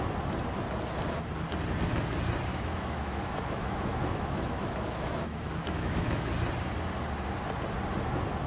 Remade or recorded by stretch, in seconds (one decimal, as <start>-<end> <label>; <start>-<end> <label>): 0.0-2.5 recorded; 2.5-6.3 remade; 6.3-8.5 recorded